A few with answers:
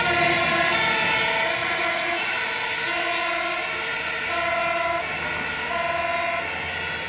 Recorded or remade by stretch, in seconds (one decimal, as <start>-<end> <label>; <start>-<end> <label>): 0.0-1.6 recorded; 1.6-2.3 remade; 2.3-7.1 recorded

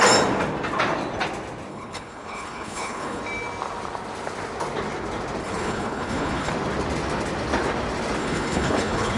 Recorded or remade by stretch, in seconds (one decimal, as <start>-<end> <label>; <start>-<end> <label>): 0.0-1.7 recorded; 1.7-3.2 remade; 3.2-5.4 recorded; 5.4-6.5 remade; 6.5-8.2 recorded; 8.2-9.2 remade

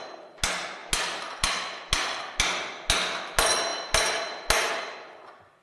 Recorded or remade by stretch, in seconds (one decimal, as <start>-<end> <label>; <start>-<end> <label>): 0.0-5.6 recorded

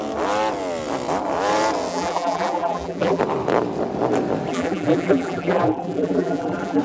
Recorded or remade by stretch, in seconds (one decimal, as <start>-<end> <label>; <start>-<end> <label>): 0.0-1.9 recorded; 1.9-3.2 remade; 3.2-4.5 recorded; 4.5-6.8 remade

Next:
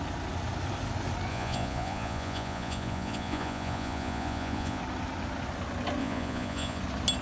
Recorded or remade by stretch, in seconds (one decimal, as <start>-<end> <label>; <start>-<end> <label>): 0.0-1.3 recorded; 1.3-4.8 remade; 4.8-6.0 recorded; 6.0-6.8 remade; 6.8-7.2 recorded